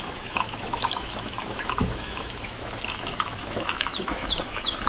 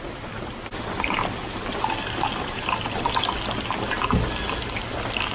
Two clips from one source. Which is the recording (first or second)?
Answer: second